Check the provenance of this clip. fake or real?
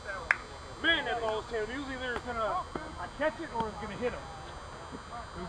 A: real